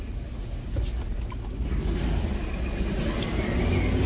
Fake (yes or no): no